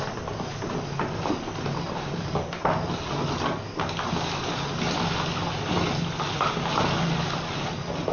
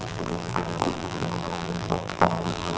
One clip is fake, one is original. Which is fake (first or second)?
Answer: second